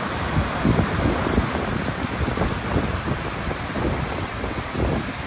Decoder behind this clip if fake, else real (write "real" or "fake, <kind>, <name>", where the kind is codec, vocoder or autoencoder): real